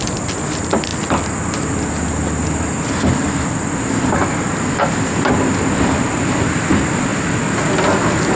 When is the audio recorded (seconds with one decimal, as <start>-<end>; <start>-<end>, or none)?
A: 0.0-8.4